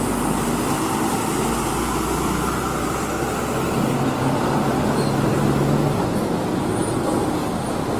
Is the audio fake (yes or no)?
no